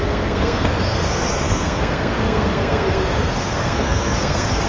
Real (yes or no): no